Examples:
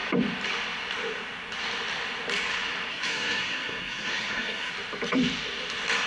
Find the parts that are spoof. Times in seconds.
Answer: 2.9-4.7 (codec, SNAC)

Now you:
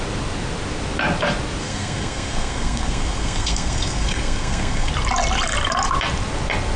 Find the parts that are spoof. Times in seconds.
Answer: 1.6-4.9 (codec, SNAC)

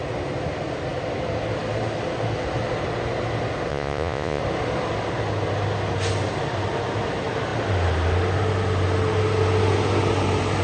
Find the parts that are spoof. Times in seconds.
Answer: 3.7-4.4 (vocoder, Vocos)

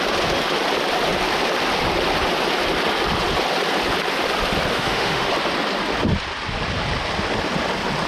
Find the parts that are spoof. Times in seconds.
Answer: 4.7-5.3 (autoencoder, DAC-VAE)